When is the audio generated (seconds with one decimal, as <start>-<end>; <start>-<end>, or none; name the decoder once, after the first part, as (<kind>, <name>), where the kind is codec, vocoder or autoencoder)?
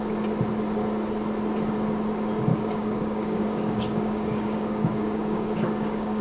2.5-6.2 (codec, DAC)